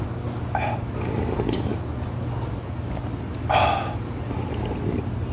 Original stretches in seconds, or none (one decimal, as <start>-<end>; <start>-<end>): 0.0-5.3